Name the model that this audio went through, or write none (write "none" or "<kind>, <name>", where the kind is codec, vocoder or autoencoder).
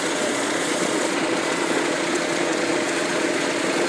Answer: vocoder, Vocos